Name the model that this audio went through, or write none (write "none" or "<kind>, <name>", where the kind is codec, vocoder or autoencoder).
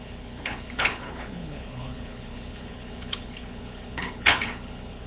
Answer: codec, HILCodec